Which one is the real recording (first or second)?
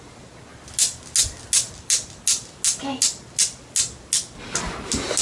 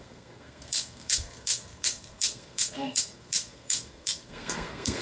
first